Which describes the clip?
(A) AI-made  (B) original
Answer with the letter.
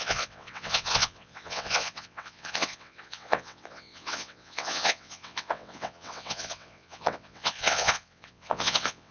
A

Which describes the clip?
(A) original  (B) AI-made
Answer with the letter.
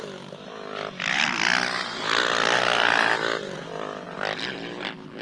A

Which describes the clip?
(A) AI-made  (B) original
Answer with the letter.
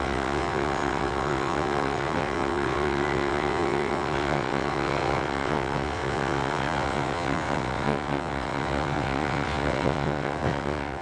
A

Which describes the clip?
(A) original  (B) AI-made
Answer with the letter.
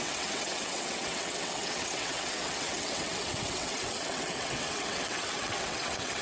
B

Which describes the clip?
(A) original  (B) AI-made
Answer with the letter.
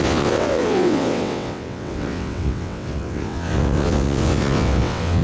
B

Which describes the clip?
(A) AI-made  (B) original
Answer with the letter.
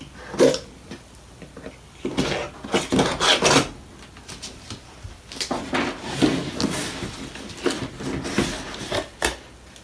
B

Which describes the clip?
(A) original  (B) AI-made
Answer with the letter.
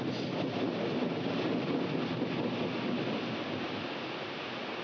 A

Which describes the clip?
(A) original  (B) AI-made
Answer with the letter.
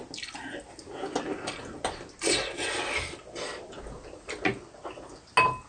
A